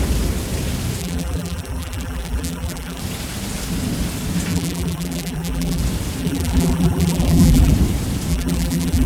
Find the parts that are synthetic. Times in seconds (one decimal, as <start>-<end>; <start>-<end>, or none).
1.0-3.0; 4.5-5.8; 6.2-7.7; 8.3-9.1